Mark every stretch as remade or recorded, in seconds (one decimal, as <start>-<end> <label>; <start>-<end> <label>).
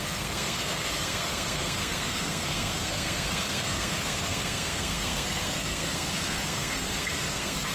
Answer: 0.0-7.7 remade